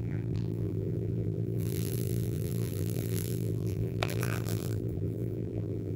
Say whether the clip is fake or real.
fake